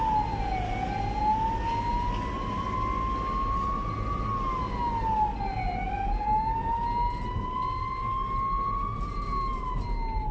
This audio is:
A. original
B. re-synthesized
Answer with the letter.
A